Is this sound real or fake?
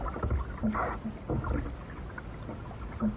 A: real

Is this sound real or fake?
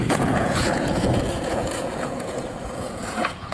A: fake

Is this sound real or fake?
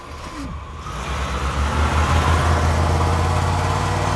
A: real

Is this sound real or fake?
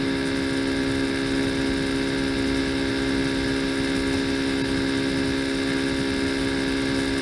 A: real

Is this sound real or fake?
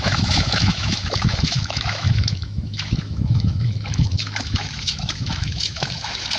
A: fake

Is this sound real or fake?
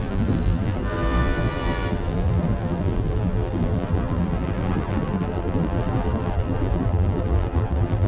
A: fake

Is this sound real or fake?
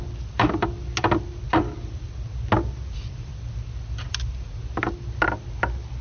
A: real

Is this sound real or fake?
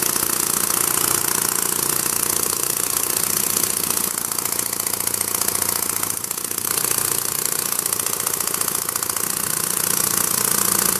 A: real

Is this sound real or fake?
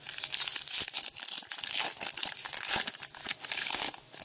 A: real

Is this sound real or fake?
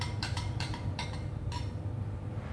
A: fake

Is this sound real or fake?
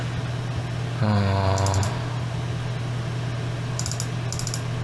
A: real